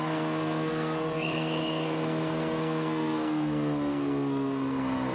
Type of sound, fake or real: fake